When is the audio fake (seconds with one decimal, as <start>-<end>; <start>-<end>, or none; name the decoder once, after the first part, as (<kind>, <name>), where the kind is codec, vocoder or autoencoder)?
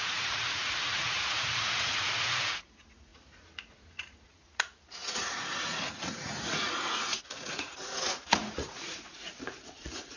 0.0-10.2 (vocoder, Vocos)